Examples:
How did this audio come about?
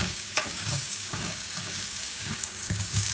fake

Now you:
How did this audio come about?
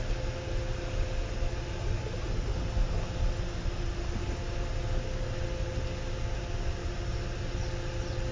real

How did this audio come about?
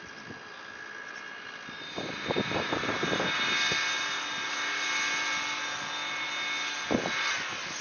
real